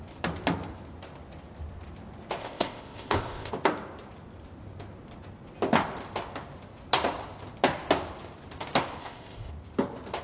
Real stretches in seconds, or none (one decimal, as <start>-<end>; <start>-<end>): 0.0-2.4; 3.5-9.0; 9.5-10.2

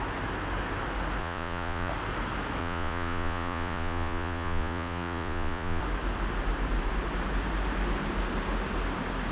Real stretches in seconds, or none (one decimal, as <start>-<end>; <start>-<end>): 0.0-1.2; 1.9-2.6; 5.8-9.3

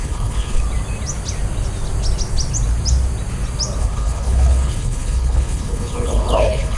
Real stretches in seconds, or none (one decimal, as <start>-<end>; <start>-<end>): 0.6-3.8

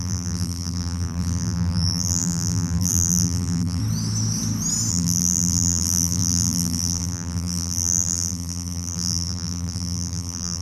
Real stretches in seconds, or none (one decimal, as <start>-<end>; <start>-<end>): 3.8-4.9

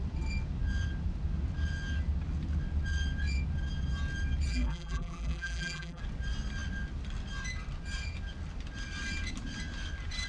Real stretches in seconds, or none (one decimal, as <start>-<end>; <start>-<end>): 0.0-4.5; 6.0-10.3